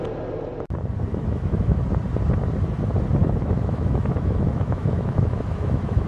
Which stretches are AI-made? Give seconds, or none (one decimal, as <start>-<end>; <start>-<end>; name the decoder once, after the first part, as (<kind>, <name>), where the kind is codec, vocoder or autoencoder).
1.1-1.8 (autoencoder, DAC-VAE); 3.2-6.1